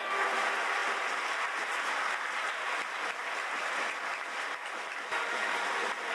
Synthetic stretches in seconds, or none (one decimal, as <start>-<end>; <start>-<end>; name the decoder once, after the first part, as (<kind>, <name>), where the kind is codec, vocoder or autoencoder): none